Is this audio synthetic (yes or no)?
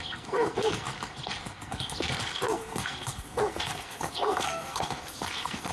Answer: yes